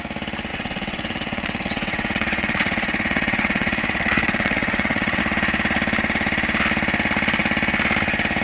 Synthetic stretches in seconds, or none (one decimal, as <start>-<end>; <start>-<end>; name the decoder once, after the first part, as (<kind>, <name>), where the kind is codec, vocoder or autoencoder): 0.5-5.2 (vocoder, WaveNeXt)